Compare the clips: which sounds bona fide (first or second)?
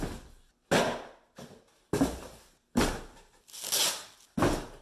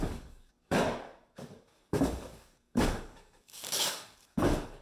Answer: first